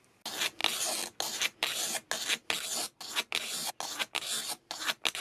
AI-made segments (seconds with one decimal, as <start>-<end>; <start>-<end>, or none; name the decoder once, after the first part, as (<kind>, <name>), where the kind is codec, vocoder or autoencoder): none